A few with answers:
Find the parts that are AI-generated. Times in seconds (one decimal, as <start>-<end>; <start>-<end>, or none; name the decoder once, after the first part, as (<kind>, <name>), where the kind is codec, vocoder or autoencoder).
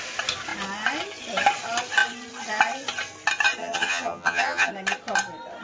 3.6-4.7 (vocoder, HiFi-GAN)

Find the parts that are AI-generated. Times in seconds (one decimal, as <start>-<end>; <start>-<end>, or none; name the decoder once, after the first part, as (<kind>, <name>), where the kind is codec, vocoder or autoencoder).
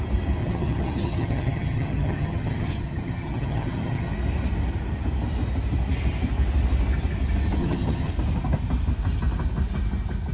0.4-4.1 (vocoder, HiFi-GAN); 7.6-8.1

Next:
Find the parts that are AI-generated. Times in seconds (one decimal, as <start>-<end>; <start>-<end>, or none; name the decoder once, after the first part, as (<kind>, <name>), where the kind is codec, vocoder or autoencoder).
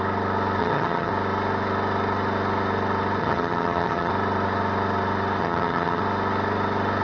0.6-1.1 (vocoder, HiFi-GAN); 3.2-4.1; 5.4-6.0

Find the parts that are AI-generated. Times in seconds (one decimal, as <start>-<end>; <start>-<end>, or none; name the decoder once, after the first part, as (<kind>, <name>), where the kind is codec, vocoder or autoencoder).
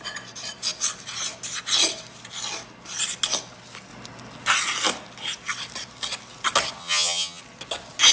6.8-7.4 (vocoder, HiFi-GAN)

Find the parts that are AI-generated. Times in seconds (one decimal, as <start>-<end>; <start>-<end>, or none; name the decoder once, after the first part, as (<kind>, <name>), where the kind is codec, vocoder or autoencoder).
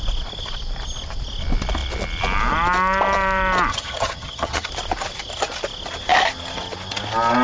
3.7-4.7 (vocoder, HiFi-GAN)